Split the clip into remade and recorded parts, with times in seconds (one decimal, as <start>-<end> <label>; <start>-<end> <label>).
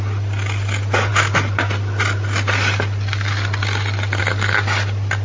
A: 0.0-5.2 recorded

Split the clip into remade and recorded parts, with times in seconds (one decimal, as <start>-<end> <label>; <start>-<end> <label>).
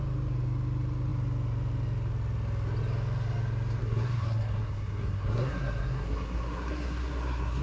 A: 0.0-3.8 recorded; 3.8-7.6 remade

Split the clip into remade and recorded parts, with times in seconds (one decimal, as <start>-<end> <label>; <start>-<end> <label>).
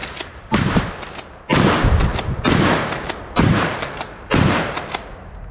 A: 0.0-0.8 remade; 0.8-2.1 recorded; 2.1-5.1 remade; 5.1-5.5 recorded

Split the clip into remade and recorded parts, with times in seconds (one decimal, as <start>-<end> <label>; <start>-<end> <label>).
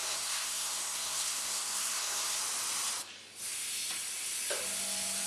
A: 0.0-2.4 remade; 2.4-5.3 recorded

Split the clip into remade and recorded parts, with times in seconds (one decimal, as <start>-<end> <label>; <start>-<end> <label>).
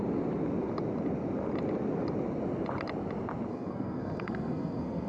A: 0.0-3.5 recorded; 3.5-5.1 remade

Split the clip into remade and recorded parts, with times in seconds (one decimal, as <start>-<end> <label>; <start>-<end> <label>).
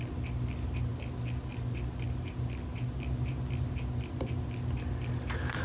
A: 0.0-5.6 recorded